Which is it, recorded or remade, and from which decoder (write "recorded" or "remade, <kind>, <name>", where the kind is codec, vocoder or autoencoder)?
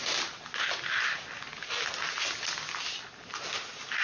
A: recorded